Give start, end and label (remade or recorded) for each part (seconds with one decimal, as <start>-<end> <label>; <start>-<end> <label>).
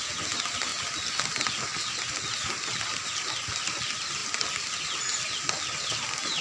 0.0-6.4 recorded